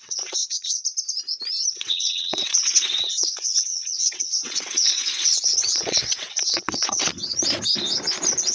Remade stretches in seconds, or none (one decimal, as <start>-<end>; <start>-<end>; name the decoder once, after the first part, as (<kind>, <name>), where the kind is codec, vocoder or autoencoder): 0.0-0.8 (vocoder, WaveNeXt); 1.7-7.1